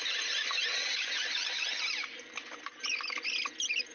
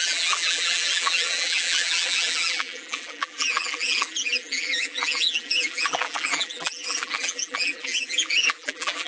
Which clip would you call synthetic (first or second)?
second